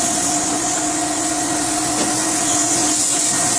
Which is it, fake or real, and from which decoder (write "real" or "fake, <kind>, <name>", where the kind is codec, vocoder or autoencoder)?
fake, vocoder, Vocos